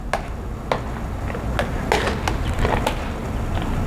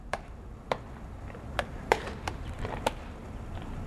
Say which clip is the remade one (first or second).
second